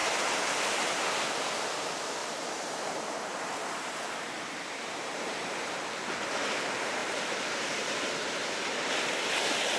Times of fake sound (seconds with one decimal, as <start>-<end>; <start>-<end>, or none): 2.2-6.2; 7.0-8.2

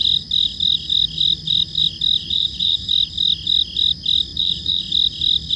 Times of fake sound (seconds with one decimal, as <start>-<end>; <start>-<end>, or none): 2.2-2.9; 4.3-4.8

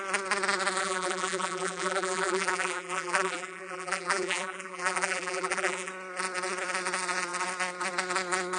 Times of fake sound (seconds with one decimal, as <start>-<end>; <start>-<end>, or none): 0.8-5.9

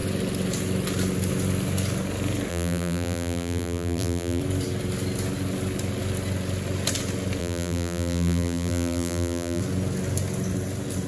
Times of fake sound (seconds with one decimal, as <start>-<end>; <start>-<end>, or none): 2.5-4.4; 7.4-9.6

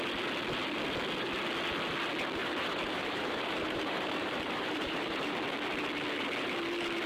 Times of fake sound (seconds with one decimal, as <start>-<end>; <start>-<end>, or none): 2.4-5.4